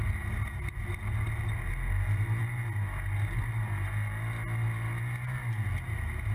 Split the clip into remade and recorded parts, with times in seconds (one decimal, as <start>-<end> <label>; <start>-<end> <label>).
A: 0.0-6.3 recorded